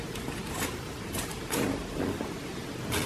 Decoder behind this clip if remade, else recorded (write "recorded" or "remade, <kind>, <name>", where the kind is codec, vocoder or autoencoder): recorded